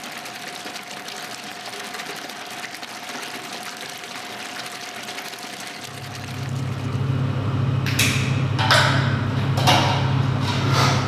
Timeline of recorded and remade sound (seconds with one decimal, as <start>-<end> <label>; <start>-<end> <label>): 0.0-11.1 recorded